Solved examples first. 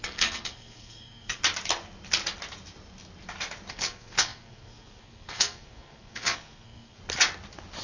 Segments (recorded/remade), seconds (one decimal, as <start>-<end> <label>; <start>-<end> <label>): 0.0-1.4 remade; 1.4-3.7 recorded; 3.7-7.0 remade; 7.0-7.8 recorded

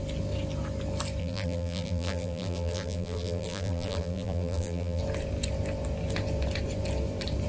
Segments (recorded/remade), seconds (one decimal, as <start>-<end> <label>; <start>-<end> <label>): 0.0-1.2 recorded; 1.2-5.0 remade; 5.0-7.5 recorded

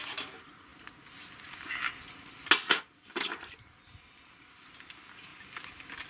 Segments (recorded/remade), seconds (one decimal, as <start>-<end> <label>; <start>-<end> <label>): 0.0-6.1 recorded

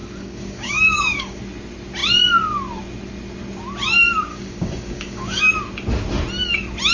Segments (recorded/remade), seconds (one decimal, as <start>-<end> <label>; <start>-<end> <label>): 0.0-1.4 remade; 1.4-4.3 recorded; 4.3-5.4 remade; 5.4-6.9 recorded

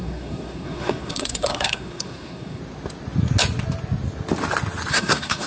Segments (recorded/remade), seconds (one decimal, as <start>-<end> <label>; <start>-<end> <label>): 0.0-2.6 remade; 2.6-4.9 recorded; 4.9-5.5 remade

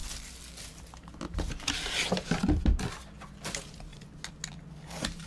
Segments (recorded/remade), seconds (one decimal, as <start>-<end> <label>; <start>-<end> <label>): 0.0-2.8 remade; 2.8-5.3 recorded